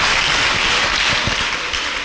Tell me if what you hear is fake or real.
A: real